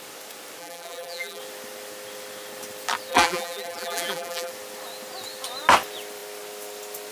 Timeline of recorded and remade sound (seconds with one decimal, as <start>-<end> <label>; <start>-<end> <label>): 0.0-0.6 recorded; 0.6-1.4 remade; 1.4-3.1 recorded; 3.1-4.5 remade; 4.5-7.1 recorded